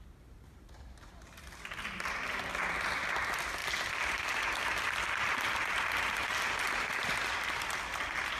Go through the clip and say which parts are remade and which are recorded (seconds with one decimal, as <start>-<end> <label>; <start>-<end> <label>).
0.0-8.4 recorded